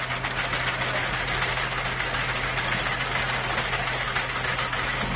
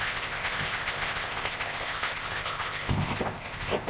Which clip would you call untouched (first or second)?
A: first